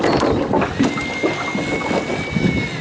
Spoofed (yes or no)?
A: no